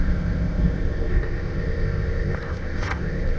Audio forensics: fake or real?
fake